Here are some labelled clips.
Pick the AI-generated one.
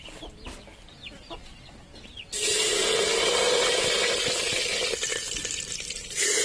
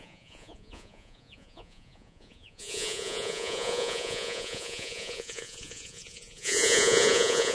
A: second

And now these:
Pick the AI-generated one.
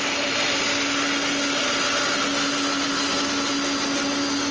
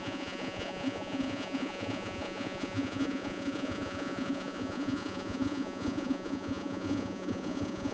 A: second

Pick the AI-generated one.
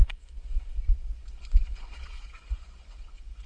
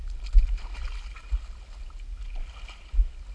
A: first